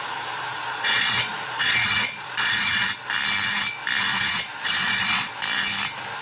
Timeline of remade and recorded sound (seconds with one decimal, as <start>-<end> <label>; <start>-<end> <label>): 0.0-0.5 recorded; 0.5-2.9 remade; 2.9-4.1 recorded; 4.1-5.3 remade; 5.3-6.2 recorded

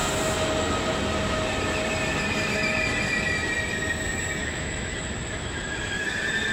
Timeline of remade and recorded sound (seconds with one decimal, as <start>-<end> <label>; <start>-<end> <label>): 0.0-4.4 recorded; 4.4-6.0 remade; 6.0-6.5 recorded

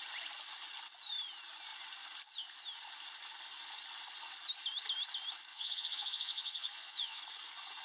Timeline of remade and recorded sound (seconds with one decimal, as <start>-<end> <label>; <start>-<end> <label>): 0.0-5.5 recorded; 5.5-7.2 remade; 7.2-7.8 recorded

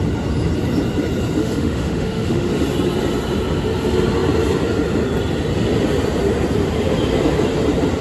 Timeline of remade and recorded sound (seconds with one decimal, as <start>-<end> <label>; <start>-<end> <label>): 0.0-1.4 recorded; 1.4-2.5 remade; 2.5-8.0 recorded